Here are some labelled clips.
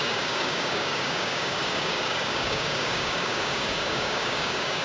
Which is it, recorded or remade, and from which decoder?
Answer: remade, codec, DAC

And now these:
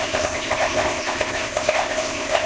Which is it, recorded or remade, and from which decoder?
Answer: remade, codec, ZipCodec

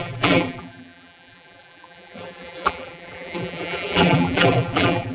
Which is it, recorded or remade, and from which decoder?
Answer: remade, vocoder, BigVGAN v2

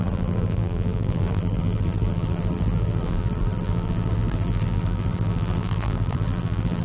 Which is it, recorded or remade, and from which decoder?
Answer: remade, vocoder, BigVGAN v2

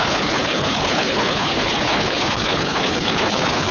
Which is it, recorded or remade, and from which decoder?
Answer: remade, codec, HILCodec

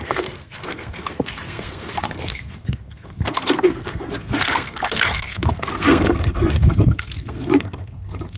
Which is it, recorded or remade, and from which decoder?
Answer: remade, codec, SNAC